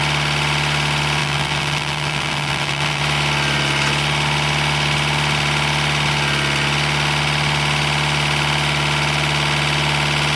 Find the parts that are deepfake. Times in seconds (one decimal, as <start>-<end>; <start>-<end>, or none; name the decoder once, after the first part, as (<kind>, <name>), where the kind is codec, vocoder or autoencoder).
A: 1.2-3.0 (vocoder, BigVGAN v2)